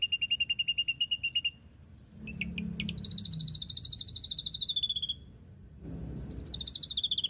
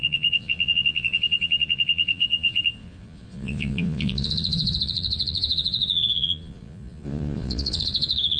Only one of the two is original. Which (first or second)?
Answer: first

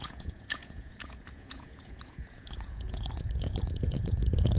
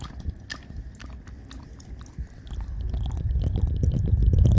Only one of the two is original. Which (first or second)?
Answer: second